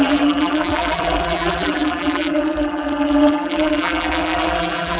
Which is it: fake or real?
fake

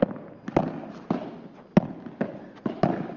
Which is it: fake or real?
real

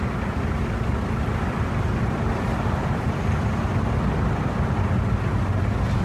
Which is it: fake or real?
real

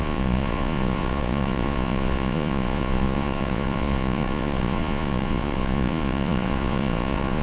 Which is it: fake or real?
fake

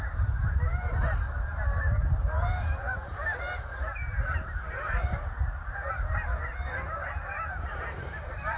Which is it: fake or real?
fake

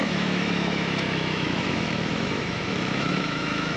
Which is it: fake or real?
fake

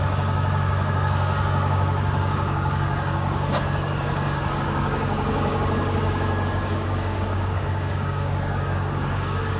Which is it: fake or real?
fake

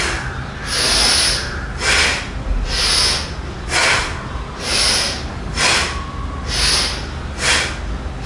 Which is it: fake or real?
real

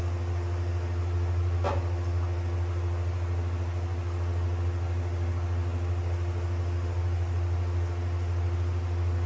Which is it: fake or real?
real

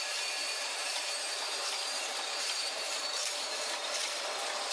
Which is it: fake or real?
fake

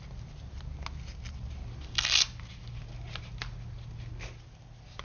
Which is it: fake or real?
real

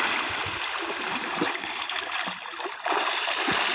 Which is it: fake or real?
fake